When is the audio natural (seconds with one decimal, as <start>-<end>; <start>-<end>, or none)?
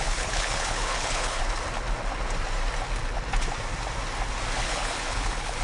1.4-4.6